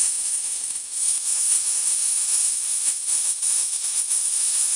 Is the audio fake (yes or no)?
yes